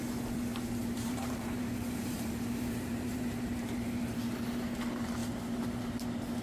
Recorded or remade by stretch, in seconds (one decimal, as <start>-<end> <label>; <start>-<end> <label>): 0.0-0.8 recorded; 0.8-4.2 remade; 4.2-6.4 recorded